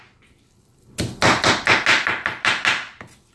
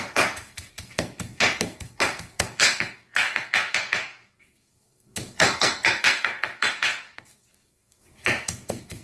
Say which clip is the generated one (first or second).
second